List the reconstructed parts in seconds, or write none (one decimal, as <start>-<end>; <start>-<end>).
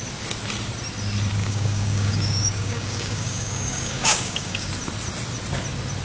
1.4-4.7